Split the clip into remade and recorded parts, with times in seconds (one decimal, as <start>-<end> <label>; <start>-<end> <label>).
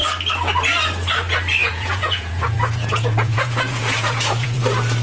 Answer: 0.0-1.6 recorded; 1.6-4.6 remade; 4.6-5.0 recorded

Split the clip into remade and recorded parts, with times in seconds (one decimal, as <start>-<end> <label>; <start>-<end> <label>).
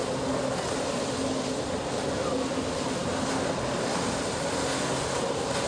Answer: 0.0-5.7 recorded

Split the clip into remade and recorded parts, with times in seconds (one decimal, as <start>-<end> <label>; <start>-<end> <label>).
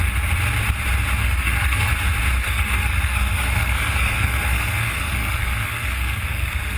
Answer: 0.0-1.2 recorded; 1.2-1.9 remade; 1.9-2.4 recorded; 2.4-6.8 remade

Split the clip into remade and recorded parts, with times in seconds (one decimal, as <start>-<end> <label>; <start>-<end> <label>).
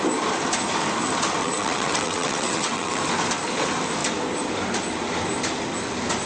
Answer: 0.0-1.4 recorded; 1.4-3.0 remade; 3.0-6.3 recorded